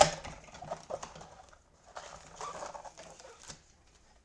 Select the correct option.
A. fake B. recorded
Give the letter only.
B